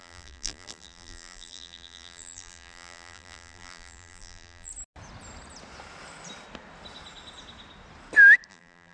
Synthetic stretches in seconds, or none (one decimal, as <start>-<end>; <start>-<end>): 0.0-4.7; 8.5-8.9